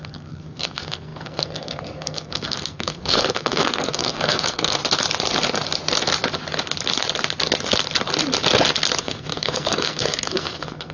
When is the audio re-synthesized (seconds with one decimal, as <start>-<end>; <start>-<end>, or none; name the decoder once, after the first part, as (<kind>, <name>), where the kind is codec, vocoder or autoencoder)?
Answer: 0.0-4.8 (codec, SNAC); 9.0-10.9